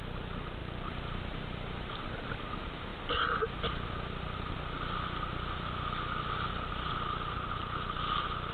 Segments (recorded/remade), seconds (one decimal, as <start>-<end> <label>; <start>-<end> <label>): 0.0-0.6 recorded; 0.6-1.4 remade; 1.4-8.5 recorded